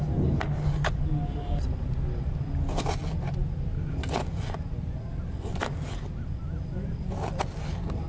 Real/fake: real